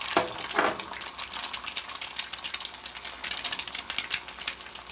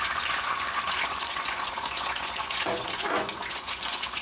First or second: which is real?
first